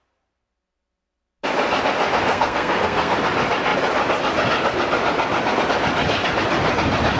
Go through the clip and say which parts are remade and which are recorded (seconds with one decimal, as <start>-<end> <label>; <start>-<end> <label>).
0.0-2.3 recorded; 2.3-3.1 remade; 3.1-7.2 recorded